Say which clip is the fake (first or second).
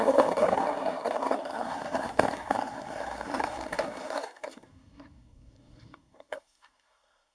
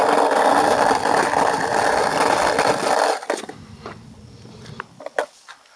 first